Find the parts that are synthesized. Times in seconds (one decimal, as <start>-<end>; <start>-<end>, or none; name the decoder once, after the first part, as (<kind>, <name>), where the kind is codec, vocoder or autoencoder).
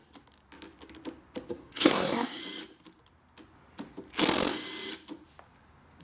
1.5-2.4 (codec, SNAC)